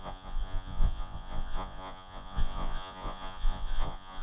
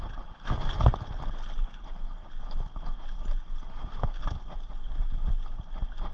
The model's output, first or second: first